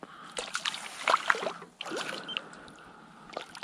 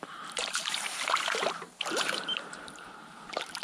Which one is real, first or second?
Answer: first